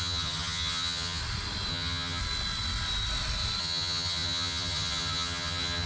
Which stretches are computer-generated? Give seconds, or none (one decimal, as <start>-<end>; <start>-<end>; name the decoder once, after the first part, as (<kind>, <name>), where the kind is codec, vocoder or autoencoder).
0.0-1.2 (vocoder, HiFi-GAN); 1.7-2.2; 3.6-5.9